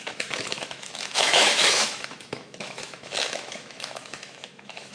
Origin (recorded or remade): remade